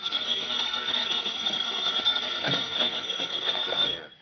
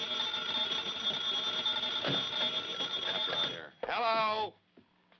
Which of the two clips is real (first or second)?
second